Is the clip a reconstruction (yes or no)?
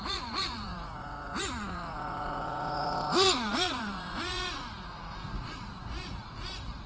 yes